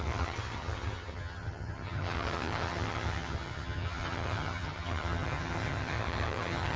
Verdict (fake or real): fake